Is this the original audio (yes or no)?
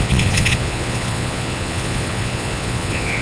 no